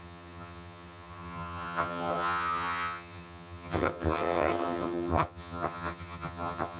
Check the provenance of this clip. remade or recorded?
remade